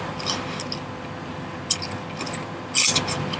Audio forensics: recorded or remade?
recorded